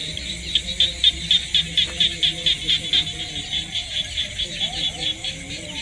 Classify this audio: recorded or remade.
recorded